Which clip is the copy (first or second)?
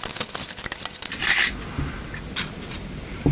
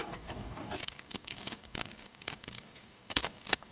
second